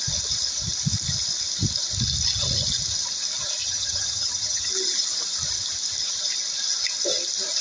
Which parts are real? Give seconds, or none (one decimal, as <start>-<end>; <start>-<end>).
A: 0.0-3.6; 4.7-7.6